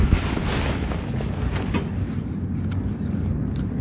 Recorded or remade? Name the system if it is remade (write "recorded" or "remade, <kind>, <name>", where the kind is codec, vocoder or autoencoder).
recorded